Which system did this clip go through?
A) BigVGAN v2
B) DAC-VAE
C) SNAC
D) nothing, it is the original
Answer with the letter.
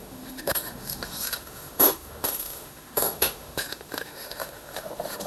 B